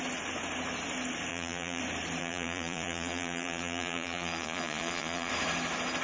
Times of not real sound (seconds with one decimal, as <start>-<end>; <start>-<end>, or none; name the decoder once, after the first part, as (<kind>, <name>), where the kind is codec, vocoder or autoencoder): 1.3-1.8 (vocoder, Vocos); 2.2-5.3